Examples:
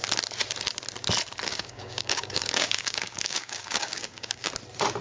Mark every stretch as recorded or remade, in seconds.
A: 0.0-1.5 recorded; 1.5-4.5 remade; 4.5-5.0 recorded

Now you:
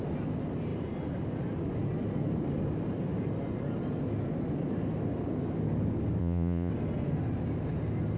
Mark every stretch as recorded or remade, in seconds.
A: 0.0-6.2 recorded; 6.2-6.7 remade; 6.7-8.2 recorded

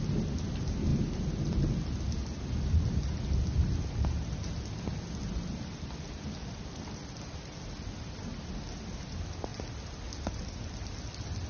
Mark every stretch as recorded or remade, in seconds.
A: 0.0-11.5 recorded

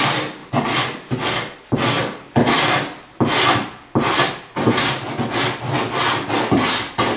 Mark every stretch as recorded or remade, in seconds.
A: 0.0-7.2 recorded

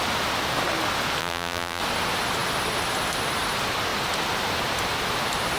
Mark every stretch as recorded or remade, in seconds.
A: 0.0-1.2 recorded; 1.2-1.8 remade; 1.8-5.6 recorded